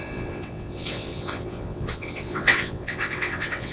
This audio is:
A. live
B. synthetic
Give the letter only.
B